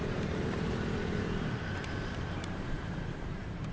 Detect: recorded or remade remade